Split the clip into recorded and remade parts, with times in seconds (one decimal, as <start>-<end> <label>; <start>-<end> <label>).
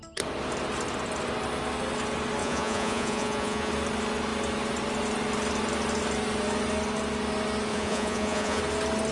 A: 0.0-2.4 recorded; 2.4-3.7 remade; 3.7-7.7 recorded; 7.7-8.6 remade; 8.6-9.1 recorded